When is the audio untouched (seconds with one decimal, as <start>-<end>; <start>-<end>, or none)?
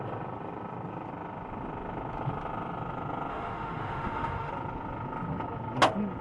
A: 0.0-3.3; 4.5-6.2